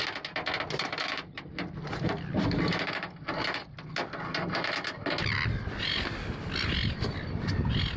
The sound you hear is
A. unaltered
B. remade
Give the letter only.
A